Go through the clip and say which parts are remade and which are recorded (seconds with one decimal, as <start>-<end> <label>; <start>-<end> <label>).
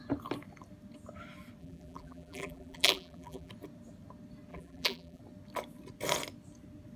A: 0.0-1.6 recorded; 1.6-3.5 remade; 3.5-4.5 recorded; 4.5-5.2 remade; 5.2-7.0 recorded